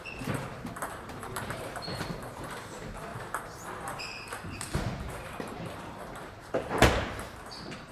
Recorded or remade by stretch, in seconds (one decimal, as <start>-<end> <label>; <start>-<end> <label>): 0.0-7.9 remade